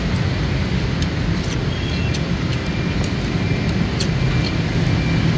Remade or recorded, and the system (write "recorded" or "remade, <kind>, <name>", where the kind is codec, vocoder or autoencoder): recorded